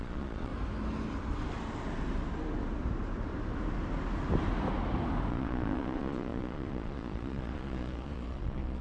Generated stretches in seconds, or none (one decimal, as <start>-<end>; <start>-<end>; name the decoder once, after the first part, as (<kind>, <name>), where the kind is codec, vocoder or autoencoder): 0.0-0.5 (vocoder, Vocos); 5.3-8.8